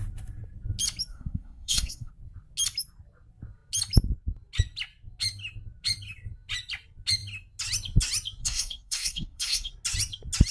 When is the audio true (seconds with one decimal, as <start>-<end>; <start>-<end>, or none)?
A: 0.0-1.1; 2.1-8.4; 9.7-10.5